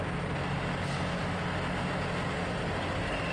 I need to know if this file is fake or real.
real